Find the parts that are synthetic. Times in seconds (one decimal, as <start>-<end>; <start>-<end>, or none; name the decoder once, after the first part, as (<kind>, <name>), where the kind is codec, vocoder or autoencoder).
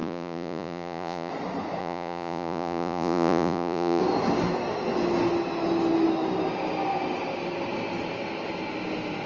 0.0-1.3 (vocoder, Vocos); 1.8-4.0